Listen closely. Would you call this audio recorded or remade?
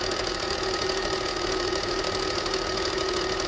remade